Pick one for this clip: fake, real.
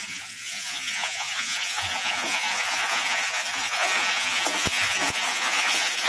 fake